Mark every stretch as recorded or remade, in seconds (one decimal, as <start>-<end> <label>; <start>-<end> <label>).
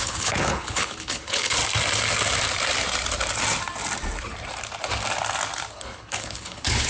0.0-1.6 remade; 1.6-5.7 recorded; 5.7-6.9 remade